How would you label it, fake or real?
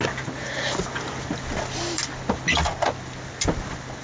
real